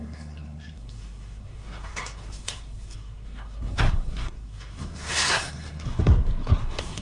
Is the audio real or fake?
fake